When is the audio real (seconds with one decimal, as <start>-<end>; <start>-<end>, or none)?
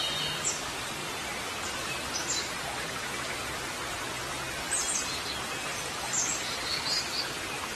0.0-7.8